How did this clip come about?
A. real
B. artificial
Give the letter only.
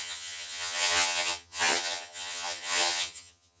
B